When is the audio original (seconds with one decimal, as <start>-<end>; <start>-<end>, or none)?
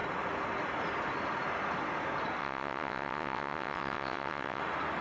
0.0-2.4; 4.6-5.0